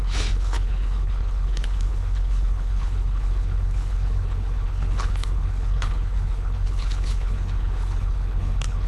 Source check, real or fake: fake